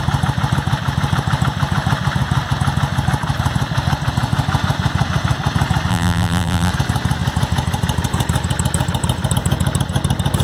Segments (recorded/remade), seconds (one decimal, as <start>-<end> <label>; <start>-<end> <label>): 0.0-5.9 recorded; 5.9-6.7 remade; 6.7-10.4 recorded